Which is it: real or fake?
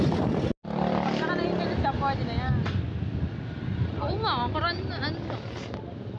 real